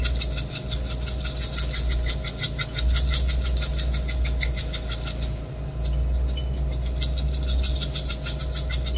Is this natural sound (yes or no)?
yes